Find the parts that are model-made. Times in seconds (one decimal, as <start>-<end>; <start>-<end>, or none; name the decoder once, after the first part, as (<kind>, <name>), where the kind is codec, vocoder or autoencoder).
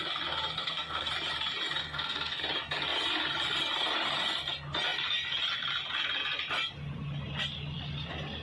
0.6-1.1 (codec, SNAC); 1.8-2.4